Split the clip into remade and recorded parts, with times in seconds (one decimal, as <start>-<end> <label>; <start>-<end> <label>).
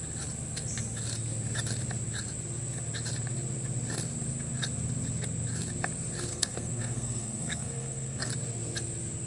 0.0-6.3 recorded; 6.3-8.3 remade; 8.3-9.3 recorded